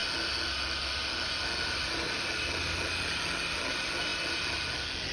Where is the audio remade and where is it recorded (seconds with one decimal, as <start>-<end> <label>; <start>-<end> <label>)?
0.0-5.1 recorded